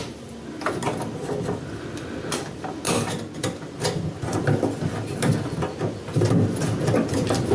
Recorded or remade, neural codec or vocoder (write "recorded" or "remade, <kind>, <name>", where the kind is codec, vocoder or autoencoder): recorded